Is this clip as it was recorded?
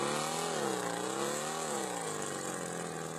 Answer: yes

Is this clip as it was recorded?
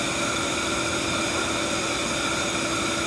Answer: yes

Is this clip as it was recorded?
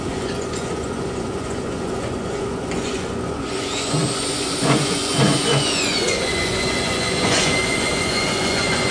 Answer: no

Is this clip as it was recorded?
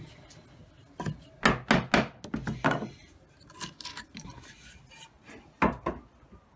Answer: yes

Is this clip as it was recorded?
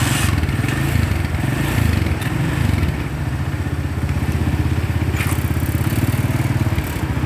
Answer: yes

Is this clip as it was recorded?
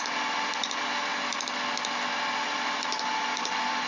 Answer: yes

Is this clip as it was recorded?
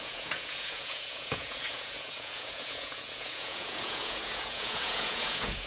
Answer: no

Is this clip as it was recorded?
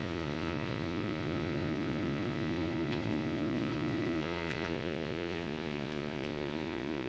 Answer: no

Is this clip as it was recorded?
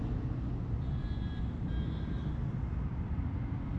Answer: yes